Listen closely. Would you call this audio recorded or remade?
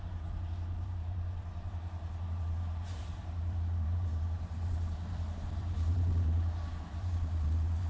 remade